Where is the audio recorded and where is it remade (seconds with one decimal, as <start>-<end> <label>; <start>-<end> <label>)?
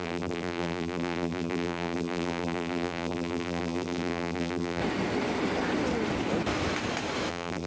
0.0-4.8 remade; 4.8-7.3 recorded; 7.3-7.7 remade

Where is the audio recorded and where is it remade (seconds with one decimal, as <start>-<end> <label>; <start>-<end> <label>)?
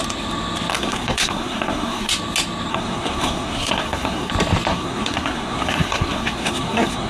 0.0-0.7 recorded; 0.7-2.1 remade; 2.1-2.7 recorded; 2.7-4.3 remade; 4.3-4.7 recorded; 4.7-7.1 remade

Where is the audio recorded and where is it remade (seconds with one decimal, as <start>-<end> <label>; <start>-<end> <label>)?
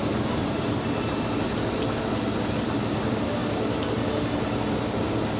0.0-0.4 recorded; 0.4-1.5 remade; 1.5-3.4 recorded; 3.4-4.1 remade; 4.1-5.4 recorded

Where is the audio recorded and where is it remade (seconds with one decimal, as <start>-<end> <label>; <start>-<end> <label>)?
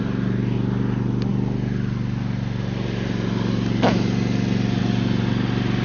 0.0-5.8 recorded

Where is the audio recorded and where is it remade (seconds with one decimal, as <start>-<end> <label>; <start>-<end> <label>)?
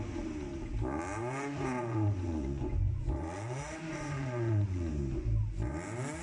0.0-1.2 recorded; 1.2-4.9 remade; 4.9-6.2 recorded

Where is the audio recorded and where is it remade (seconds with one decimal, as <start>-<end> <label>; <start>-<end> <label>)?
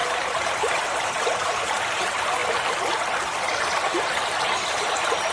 0.0-2.4 remade; 2.4-5.3 recorded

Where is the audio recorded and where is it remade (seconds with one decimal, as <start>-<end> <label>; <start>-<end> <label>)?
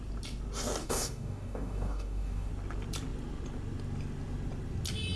0.0-0.8 recorded; 0.8-2.5 remade; 2.5-5.2 recorded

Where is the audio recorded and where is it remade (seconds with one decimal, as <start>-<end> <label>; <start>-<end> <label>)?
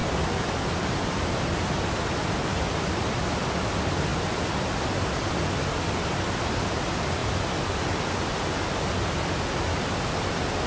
0.0-10.7 recorded